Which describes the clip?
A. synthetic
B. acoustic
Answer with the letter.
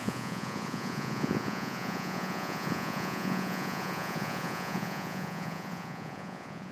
A